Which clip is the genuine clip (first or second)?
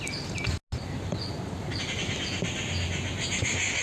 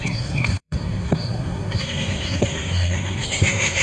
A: first